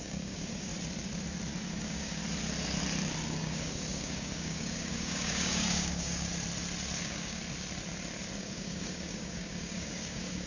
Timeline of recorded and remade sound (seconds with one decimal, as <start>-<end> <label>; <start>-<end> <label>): 0.0-0.7 remade; 0.7-1.7 recorded; 1.7-2.2 remade; 2.2-3.4 recorded; 3.4-6.3 remade; 6.3-7.0 recorded; 7.0-7.4 remade; 7.4-8.4 recorded; 8.4-10.5 remade